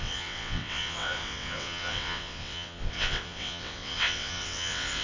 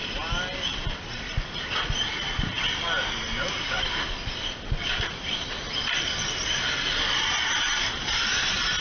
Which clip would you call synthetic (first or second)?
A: first